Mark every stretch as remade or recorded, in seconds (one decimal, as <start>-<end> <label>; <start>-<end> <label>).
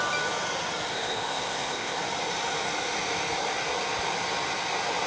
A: 0.0-0.9 recorded; 0.9-2.0 remade; 2.0-5.1 recorded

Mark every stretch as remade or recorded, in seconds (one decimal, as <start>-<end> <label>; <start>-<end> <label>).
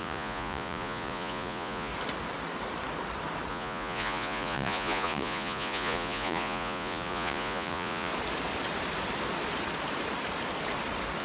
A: 0.0-1.9 remade; 1.9-3.5 recorded; 3.5-8.1 remade; 8.1-11.2 recorded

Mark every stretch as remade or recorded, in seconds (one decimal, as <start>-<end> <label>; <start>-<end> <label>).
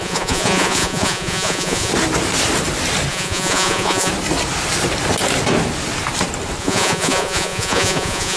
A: 0.0-1.9 remade; 1.9-3.1 recorded; 3.1-4.1 remade; 4.1-6.6 recorded; 6.6-8.4 remade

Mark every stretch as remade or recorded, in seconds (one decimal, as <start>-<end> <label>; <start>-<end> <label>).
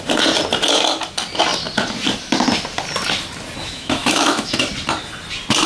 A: 0.0-3.6 recorded; 3.6-4.6 remade; 4.6-5.7 recorded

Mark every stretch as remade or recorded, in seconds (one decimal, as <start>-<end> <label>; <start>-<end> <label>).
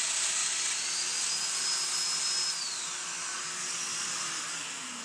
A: 0.0-5.0 recorded